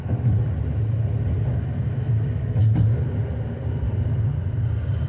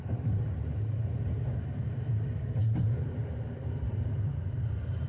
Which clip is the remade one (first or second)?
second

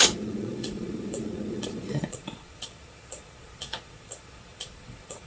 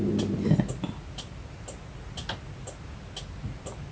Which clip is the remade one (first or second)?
first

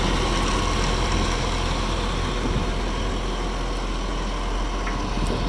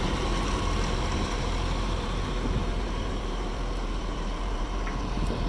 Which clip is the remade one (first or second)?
second